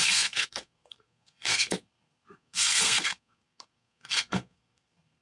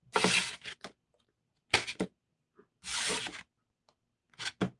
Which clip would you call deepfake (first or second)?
first